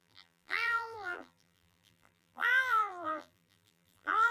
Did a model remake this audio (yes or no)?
yes